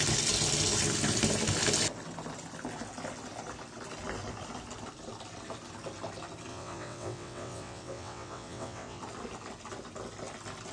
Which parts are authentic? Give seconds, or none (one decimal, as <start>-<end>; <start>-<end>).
0.0-6.5; 9.0-10.7